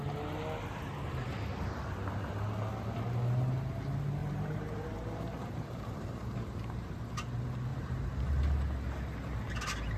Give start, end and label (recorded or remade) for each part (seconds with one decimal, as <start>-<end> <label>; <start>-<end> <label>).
0.0-4.2 recorded; 4.2-6.9 remade; 6.9-7.7 recorded; 7.7-8.4 remade; 8.4-10.0 recorded